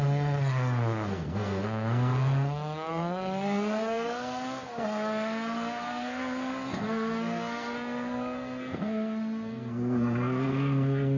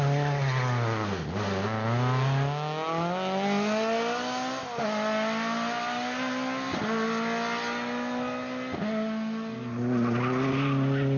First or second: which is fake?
first